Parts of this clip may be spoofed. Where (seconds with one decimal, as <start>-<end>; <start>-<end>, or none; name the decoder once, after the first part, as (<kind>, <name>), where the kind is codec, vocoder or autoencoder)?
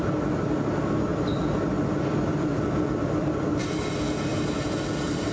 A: 2.3-3.6 (vocoder, BigVGAN v2)